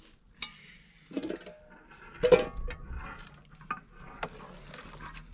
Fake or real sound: real